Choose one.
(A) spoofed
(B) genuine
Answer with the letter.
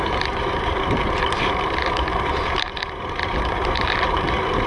A